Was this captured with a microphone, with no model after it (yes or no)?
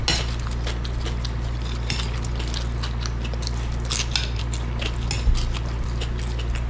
yes